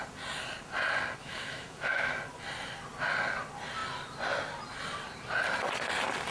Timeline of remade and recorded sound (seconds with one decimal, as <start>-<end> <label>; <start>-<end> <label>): 0.0-1.2 recorded; 1.2-2.1 remade; 2.1-6.3 recorded